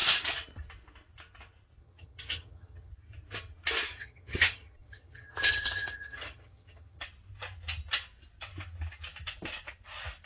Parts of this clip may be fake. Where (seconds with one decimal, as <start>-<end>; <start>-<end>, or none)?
1.8-2.9; 3.9-7.0

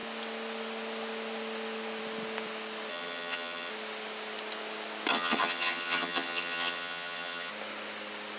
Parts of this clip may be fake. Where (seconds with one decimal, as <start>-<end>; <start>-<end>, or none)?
2.9-3.7; 5.1-7.5

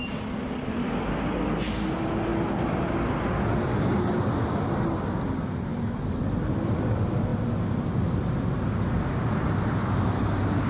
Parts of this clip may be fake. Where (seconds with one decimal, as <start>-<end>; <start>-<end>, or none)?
none

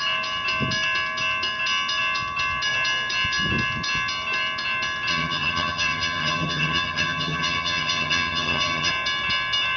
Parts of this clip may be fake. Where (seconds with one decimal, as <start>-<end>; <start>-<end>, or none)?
5.1-8.9

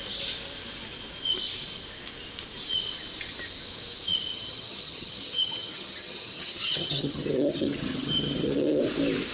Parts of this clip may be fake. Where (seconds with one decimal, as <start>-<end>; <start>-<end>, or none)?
4.3-8.8

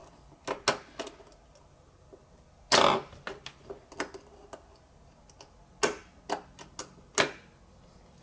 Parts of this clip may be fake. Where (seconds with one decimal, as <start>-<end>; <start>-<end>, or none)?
none

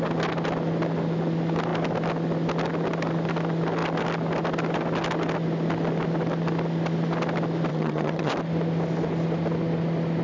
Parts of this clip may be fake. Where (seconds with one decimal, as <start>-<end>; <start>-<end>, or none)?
7.7-8.3

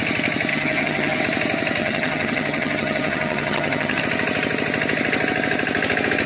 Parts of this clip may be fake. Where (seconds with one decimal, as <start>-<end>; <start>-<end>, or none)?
0.5-1.2; 1.8-4.0